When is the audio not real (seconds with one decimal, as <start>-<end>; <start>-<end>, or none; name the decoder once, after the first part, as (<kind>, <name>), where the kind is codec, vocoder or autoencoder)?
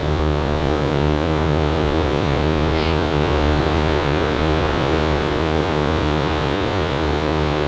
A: 0.0-7.7 (vocoder, Vocos)